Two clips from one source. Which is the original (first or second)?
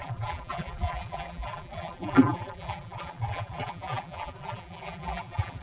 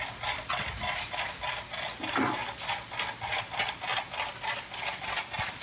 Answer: second